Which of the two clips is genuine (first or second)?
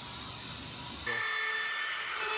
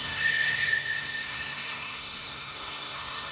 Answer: first